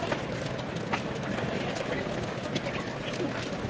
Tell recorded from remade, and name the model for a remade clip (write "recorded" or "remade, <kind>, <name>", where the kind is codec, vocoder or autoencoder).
recorded